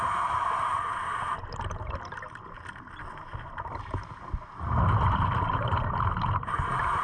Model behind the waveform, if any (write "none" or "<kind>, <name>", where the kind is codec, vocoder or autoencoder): none